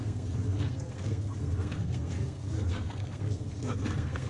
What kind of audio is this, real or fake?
fake